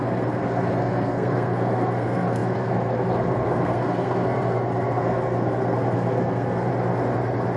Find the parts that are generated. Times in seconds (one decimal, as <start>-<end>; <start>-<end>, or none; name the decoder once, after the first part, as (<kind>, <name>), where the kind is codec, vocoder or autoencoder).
0.0-6.7 (codec, SNAC)